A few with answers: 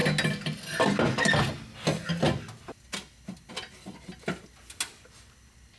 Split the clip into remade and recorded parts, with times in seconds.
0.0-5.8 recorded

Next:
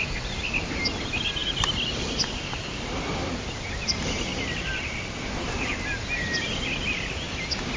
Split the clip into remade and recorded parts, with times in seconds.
0.0-7.8 recorded

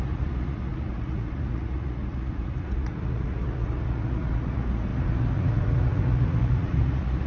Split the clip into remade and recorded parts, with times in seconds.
0.0-7.3 remade

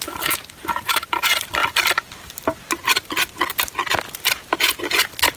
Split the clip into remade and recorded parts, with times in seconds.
0.0-5.4 recorded